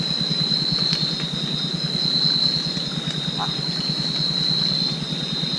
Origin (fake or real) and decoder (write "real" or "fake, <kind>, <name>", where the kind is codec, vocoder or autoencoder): real